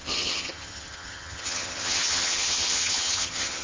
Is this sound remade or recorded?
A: remade